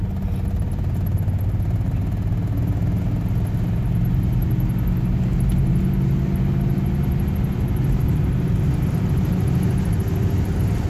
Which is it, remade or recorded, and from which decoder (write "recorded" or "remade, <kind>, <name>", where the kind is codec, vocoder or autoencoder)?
recorded